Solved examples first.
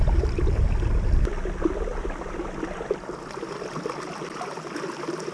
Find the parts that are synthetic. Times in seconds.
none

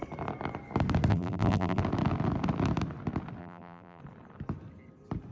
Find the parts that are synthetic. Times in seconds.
1.1-1.8 (vocoder, BigVGAN v2); 3.4-4.0

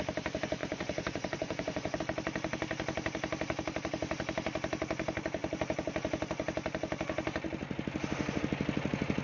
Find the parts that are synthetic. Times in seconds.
0.6-2.0 (vocoder, Vocos)

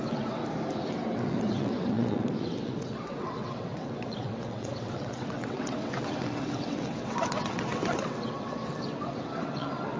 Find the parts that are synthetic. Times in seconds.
0.0-0.4 (vocoder, WaveNeXt); 0.9-10.0

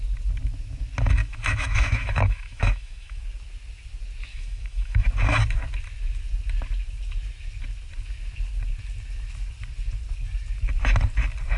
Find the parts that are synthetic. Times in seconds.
1.2-3.2 (autoencoder, DAC-VAE); 4.3-5.1

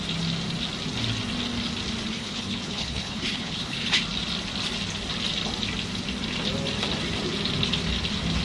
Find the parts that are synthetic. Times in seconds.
2.1-4.0 (codec, HILCodec)

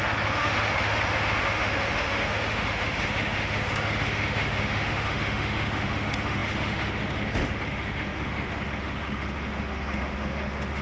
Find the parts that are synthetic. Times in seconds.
0.0-10.8 (autoencoder, DAC-VAE)

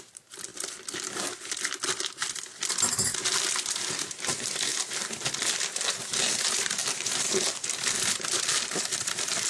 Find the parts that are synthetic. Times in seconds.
0.0-0.5 (vocoder, BigVGAN v2); 4.1-4.7; 6.0-9.5